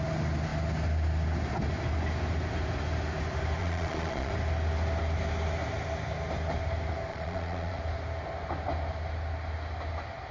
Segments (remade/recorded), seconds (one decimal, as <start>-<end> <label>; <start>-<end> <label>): 0.0-3.6 recorded; 3.6-4.3 remade; 4.3-7.1 recorded; 7.1-7.8 remade; 7.8-10.3 recorded